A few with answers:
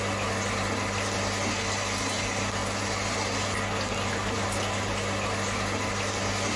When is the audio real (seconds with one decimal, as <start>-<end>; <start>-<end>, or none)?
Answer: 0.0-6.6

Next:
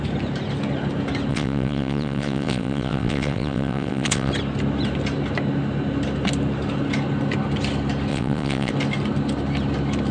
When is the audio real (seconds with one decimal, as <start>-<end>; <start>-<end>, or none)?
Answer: 0.0-1.3; 4.3-8.1; 8.7-10.1

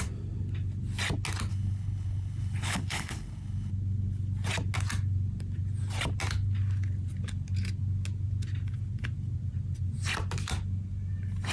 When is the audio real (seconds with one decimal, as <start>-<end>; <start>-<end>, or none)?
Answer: 0.0-1.5; 3.7-11.5

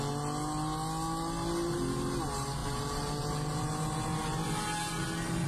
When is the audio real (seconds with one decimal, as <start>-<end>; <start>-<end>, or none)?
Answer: 0.0-5.5